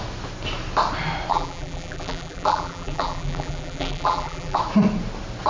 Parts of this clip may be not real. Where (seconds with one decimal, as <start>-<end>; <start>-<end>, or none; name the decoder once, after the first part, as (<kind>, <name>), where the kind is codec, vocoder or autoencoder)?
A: 1.3-4.6 (vocoder, BigVGAN v2)